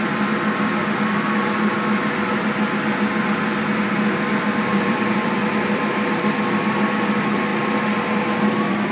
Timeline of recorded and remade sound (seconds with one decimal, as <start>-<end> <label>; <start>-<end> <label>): 0.0-4.7 recorded; 4.7-5.3 remade; 5.3-7.5 recorded; 7.5-8.9 remade